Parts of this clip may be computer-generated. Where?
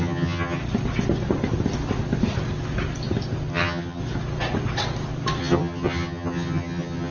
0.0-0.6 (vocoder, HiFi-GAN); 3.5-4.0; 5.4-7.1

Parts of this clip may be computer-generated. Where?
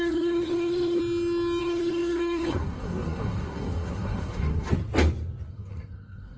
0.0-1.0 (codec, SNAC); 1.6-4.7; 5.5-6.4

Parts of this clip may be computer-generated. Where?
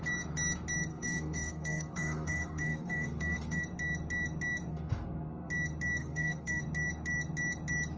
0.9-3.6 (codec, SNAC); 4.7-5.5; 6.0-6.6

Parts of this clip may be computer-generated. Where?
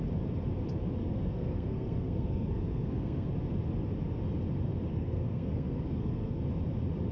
1.0-3.3 (codec, SNAC); 4.9-6.4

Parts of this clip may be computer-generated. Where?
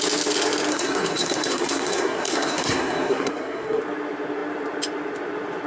0.7-3.8 (codec, SNAC)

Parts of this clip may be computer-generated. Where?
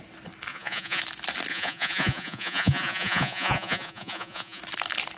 0.5-1.0 (vocoder, Vocos); 1.5-4.6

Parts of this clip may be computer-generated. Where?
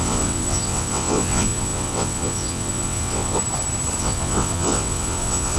0.0-3.4 (vocoder, WaveNeXt); 4.0-5.6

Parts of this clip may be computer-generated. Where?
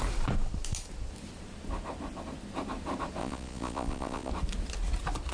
3.2-4.3 (vocoder, Vocos)